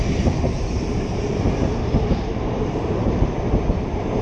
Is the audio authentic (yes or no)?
no